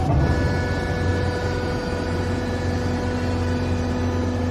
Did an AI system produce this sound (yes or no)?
no